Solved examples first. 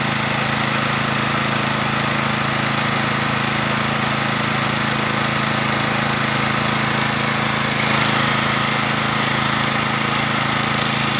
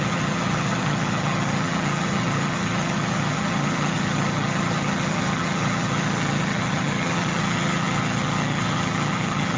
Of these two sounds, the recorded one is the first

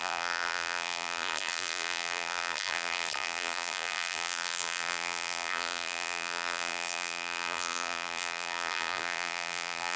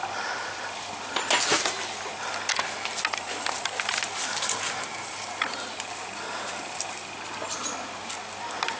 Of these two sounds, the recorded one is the second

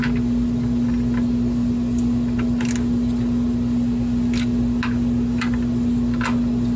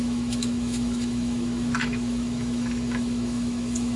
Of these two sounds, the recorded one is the first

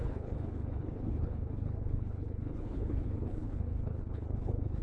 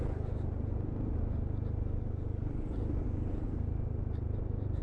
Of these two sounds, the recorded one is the second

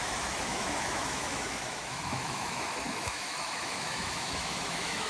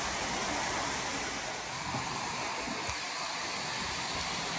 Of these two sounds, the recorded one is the second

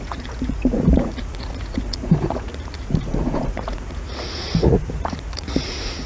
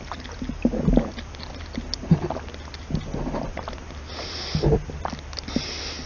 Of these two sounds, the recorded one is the second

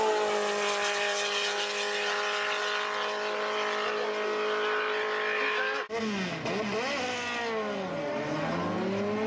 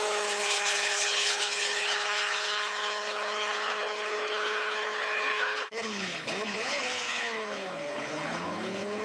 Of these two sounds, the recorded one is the first